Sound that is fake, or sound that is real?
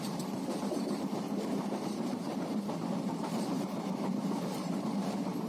fake